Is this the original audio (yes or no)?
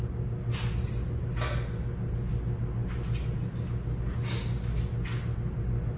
yes